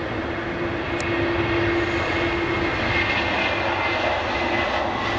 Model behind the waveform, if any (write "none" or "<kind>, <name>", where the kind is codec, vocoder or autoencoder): none